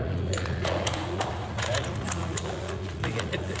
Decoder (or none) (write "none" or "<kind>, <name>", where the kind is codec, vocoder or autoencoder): vocoder, Vocos